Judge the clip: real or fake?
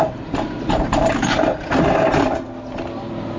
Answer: real